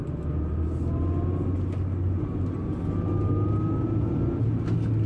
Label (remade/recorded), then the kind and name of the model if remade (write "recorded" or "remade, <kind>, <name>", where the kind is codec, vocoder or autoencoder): recorded